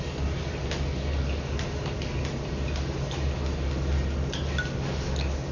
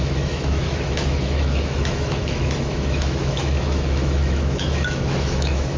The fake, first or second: second